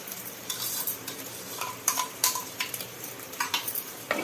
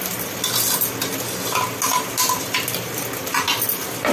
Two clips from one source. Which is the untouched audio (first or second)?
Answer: second